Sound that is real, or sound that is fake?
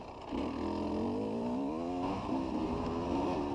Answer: real